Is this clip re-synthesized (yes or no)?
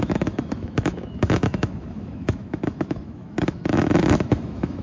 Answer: yes